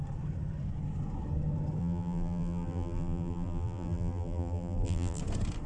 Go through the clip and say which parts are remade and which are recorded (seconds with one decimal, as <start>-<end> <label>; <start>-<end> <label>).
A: 0.0-1.8 recorded; 1.8-5.2 remade; 5.2-5.7 recorded